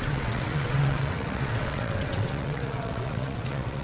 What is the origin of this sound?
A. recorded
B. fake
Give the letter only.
B